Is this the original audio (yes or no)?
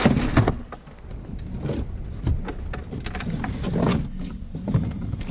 yes